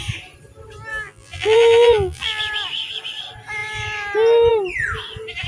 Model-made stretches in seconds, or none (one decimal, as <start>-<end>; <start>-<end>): 0.9-2.4